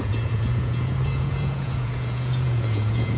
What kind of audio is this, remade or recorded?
remade